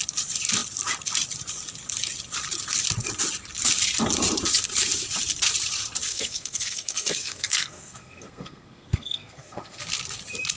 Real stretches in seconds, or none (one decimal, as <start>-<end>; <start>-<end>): 0.0-6.1; 9.8-10.6